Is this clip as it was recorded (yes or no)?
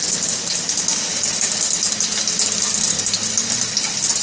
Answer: yes